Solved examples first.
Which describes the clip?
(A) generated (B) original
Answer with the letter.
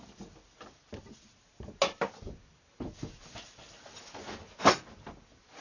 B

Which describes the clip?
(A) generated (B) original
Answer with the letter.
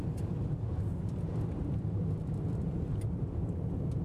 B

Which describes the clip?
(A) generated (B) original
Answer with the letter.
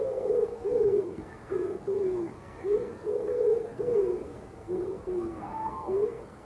A